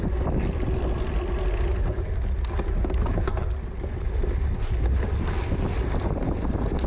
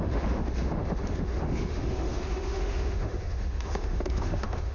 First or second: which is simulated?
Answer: second